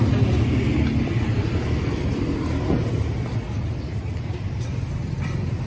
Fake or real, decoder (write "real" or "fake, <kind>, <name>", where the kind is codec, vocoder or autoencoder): real